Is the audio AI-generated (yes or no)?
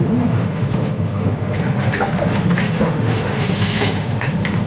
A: yes